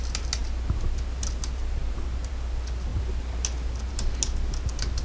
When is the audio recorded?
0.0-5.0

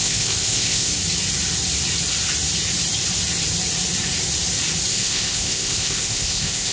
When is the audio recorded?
0.9-4.9

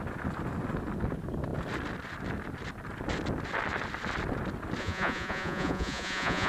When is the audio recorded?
0.0-4.8

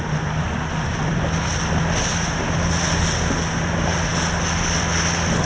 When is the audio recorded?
0.0-5.5

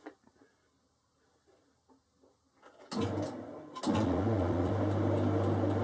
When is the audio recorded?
0.0-3.9; 4.7-5.8

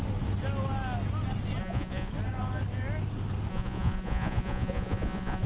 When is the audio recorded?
0.0-1.6; 2.1-3.5

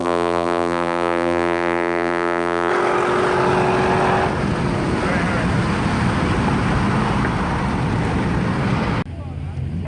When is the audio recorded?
2.7-9.9

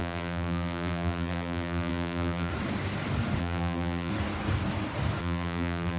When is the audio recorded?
2.5-3.4; 4.1-5.2